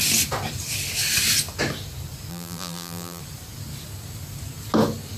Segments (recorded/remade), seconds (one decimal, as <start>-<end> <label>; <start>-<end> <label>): 0.0-2.3 recorded; 2.3-3.2 remade; 3.2-5.2 recorded